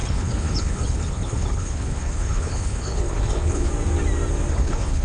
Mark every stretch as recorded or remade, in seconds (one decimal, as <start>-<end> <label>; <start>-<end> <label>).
0.0-3.7 remade; 3.7-4.5 recorded; 4.5-5.0 remade